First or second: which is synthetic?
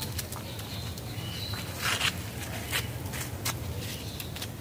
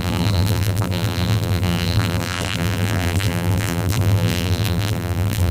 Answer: second